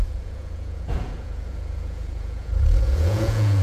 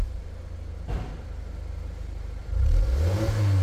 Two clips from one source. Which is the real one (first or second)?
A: second